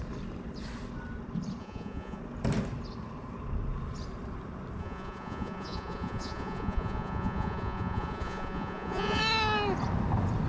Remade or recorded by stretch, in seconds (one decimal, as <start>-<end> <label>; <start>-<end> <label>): 0.0-1.6 recorded; 1.6-2.2 remade; 2.2-4.8 recorded; 4.8-9.2 remade; 9.2-10.5 recorded